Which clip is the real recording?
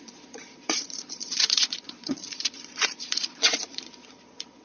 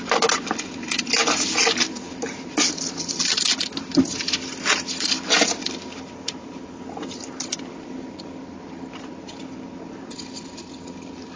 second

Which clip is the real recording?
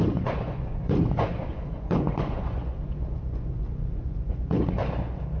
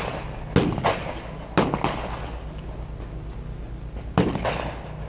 second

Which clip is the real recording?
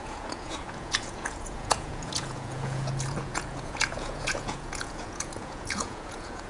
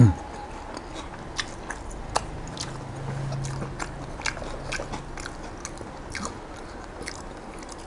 second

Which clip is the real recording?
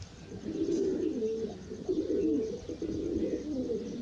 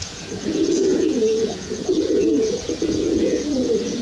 first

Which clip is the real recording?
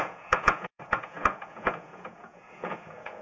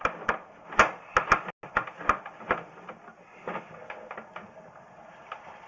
second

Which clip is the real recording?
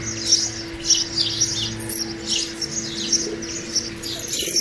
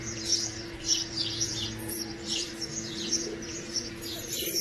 first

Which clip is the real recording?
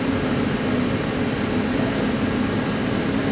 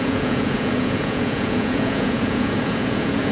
first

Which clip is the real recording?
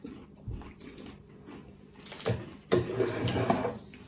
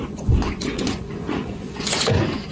first